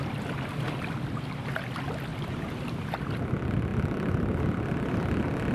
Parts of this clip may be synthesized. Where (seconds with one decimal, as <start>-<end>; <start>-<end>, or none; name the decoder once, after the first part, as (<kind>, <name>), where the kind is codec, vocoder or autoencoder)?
2.1-2.9 (vocoder, BigVGAN v2)